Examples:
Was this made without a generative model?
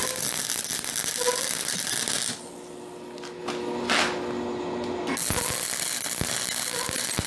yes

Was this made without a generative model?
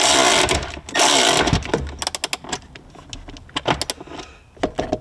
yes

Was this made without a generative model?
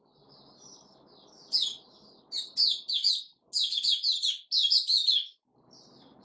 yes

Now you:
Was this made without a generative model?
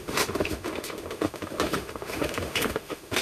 no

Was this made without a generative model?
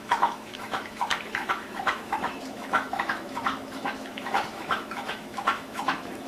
no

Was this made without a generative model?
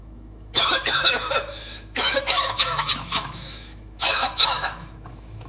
no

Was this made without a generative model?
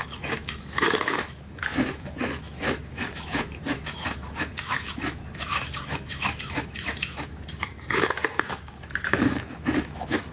no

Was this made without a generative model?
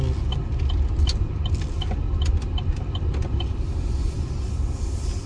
yes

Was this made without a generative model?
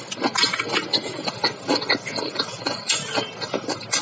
yes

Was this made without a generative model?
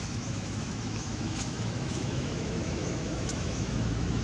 no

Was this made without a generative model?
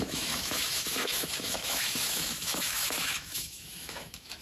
no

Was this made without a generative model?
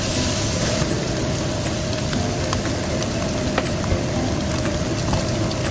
yes